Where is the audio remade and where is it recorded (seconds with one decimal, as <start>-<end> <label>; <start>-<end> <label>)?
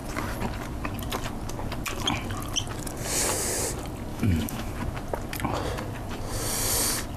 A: 0.0-4.1 recorded; 4.1-4.7 remade; 4.7-7.2 recorded